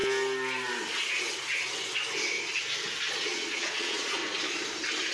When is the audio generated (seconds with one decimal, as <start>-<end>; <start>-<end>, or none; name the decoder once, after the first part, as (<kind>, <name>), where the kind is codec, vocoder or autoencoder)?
3.1-4.2 (vocoder, Vocos)